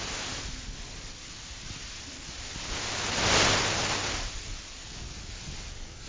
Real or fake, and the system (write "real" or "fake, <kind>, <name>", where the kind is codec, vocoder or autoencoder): real